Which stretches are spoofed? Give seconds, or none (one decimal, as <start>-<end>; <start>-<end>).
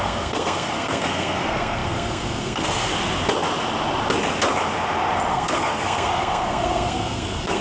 0.0-2.9; 5.3-7.6